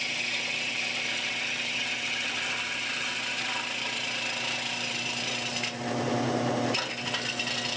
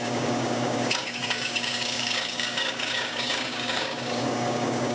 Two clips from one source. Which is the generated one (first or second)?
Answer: second